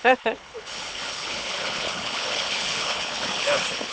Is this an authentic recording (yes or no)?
no